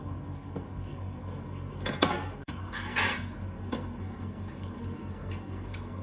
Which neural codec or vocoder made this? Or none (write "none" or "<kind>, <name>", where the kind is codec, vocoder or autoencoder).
codec, SNAC